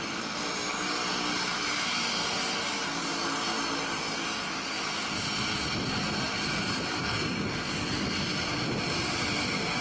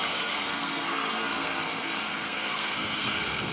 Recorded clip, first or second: first